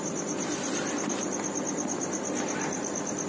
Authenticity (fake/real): real